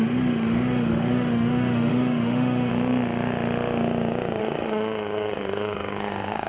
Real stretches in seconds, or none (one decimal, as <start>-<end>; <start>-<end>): 2.7-4.4